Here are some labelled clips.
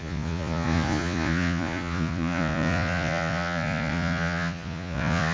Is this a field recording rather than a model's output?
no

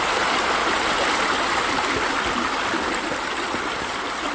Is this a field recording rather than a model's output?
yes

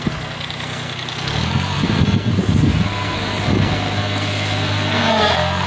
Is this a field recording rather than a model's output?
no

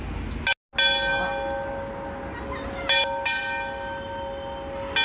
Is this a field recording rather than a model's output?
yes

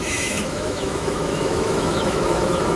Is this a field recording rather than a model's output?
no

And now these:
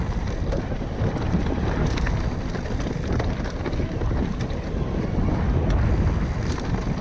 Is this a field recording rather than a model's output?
yes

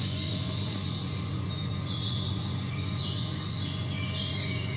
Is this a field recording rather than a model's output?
no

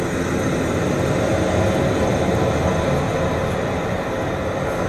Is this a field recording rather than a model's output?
yes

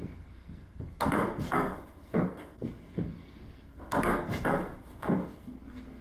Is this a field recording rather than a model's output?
no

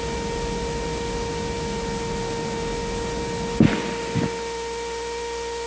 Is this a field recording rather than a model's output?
yes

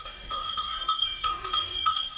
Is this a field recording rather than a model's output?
no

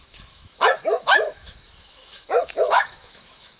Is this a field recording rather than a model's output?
no